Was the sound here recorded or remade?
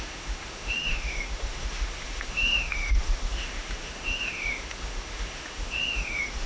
remade